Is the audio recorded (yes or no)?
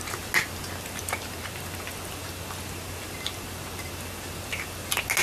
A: yes